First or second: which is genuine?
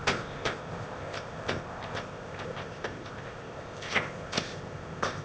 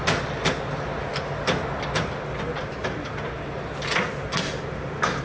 second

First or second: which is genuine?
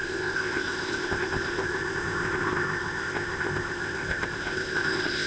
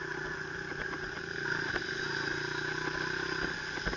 second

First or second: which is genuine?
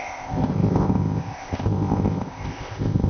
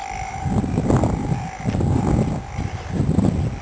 second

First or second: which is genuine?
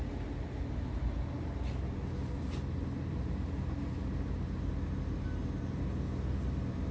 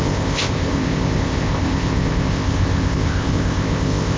first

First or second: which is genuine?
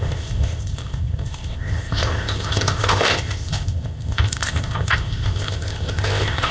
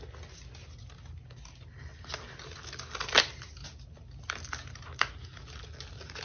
second